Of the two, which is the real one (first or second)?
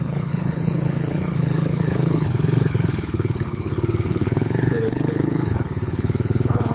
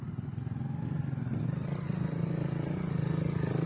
second